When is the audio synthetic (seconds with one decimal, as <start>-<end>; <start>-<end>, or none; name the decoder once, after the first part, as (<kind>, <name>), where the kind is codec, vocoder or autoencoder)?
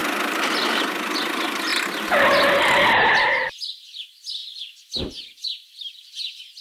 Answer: 0.8-1.7 (vocoder, BigVGAN v2); 2.6-4.4; 5.0-6.6